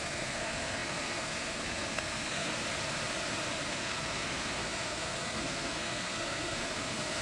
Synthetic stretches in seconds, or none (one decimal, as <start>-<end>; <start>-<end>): 0.0-2.5; 3.7-7.2